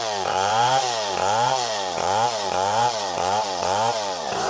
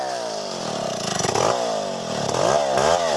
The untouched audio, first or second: second